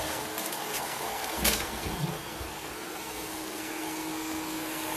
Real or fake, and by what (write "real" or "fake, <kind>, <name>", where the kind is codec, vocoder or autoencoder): fake, codec, SNAC